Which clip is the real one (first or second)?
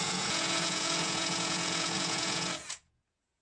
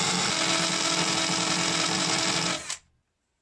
second